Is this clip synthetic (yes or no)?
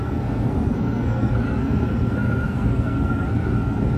yes